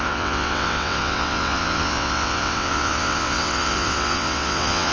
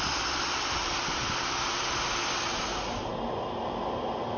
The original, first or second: second